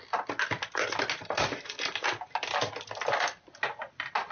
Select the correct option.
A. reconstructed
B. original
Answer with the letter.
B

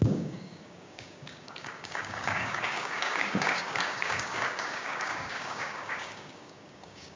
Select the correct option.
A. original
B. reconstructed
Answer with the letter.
B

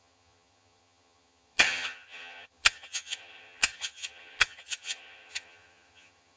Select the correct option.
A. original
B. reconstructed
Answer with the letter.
B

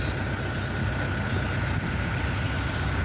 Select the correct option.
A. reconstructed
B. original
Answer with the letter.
B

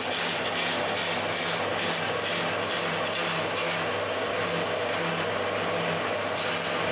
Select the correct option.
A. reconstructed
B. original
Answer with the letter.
B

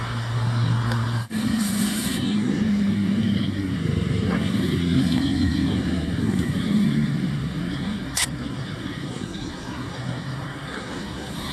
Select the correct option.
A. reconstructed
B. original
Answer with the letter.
A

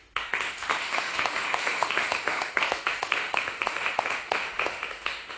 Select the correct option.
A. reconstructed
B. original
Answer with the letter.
A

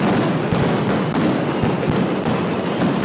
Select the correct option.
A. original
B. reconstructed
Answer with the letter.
A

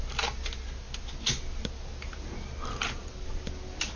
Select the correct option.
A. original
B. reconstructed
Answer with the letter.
A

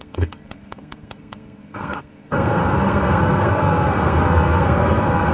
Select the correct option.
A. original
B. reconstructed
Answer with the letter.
B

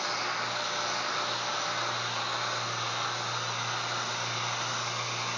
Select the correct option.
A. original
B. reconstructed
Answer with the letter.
A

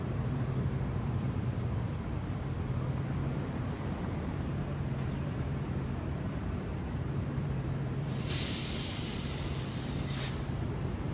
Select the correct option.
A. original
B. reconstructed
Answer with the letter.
B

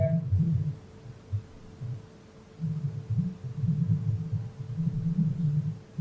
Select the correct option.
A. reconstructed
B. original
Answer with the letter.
B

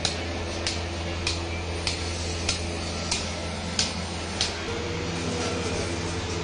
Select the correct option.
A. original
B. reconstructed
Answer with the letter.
A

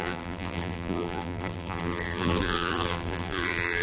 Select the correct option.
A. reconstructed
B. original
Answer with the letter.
A